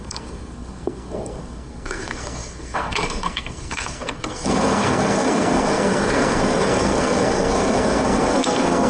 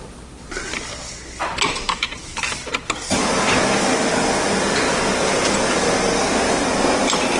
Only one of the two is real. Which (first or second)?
second